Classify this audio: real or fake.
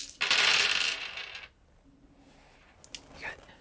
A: real